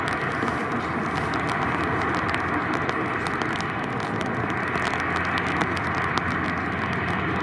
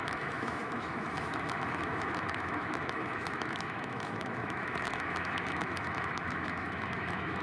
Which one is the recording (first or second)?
first